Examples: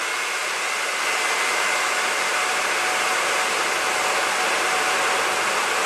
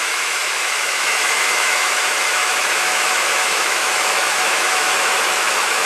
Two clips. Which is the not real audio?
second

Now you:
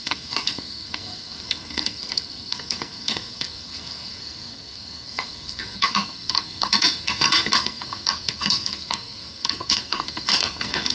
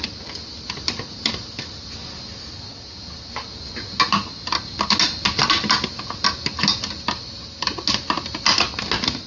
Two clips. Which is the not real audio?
first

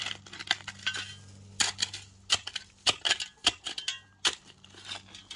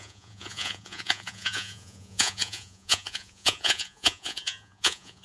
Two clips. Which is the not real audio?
second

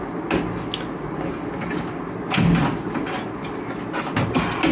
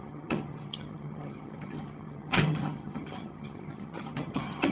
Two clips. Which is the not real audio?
second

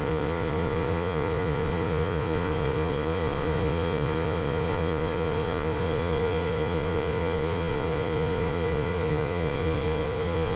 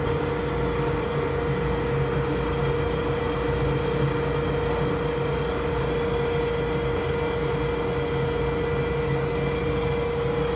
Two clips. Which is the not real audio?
first